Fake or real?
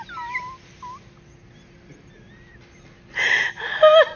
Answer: fake